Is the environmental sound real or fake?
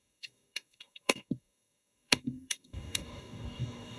fake